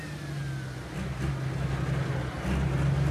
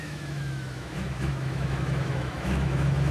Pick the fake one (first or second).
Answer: second